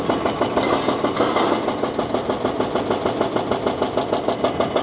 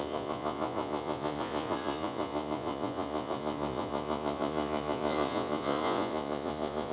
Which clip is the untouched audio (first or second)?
first